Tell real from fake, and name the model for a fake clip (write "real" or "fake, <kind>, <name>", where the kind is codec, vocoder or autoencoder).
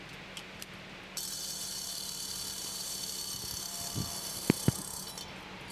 real